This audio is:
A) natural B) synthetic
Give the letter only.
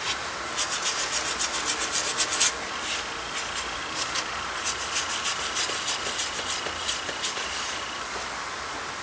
A